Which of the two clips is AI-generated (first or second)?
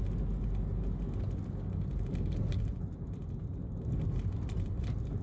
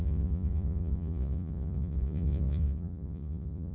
second